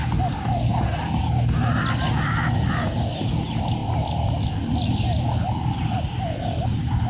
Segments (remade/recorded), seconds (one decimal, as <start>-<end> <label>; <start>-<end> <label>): 0.0-7.1 recorded